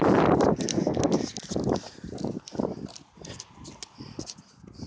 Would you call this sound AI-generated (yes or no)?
no